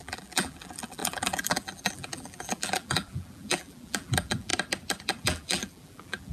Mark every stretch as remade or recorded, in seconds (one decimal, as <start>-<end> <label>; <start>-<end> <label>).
0.0-4.5 remade; 4.5-5.2 recorded; 5.2-6.3 remade